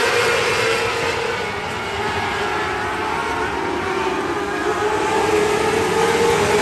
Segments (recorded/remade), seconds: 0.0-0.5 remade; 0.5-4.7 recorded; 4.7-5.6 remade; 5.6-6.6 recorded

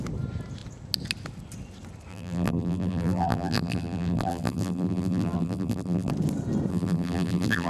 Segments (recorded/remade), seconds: 0.0-2.1 recorded; 2.1-6.1 remade; 6.1-6.7 recorded; 6.7-7.7 remade

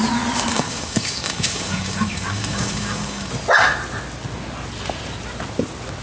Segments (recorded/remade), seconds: 0.0-0.5 recorded; 0.5-3.3 remade; 3.3-6.0 recorded

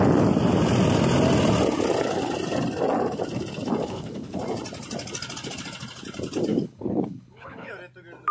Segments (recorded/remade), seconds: 0.0-3.8 recorded; 3.8-4.4 remade; 4.4-6.5 recorded; 6.5-7.7 remade; 7.7-8.3 recorded

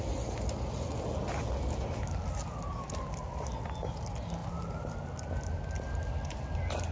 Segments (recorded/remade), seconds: 0.0-6.9 recorded